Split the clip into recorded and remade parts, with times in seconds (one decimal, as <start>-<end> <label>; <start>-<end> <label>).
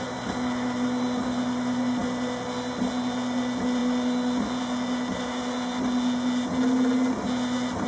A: 0.0-7.9 recorded